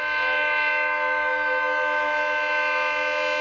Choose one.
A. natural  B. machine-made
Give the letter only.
A